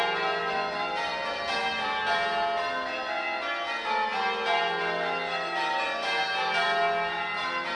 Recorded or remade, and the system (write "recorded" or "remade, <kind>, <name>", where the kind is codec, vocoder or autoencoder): recorded